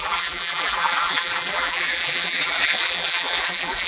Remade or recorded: remade